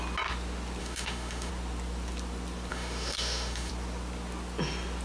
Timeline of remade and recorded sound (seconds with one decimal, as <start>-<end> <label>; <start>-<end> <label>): 0.0-0.8 recorded; 0.8-1.5 remade; 1.5-2.7 recorded; 2.7-3.7 remade; 3.7-5.0 recorded